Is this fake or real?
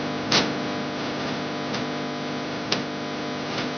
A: real